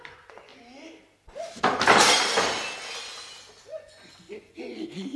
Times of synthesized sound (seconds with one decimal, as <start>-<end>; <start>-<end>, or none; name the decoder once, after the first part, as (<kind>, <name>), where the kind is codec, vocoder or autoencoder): 0.0-0.5 (vocoder, Vocos); 3.6-5.2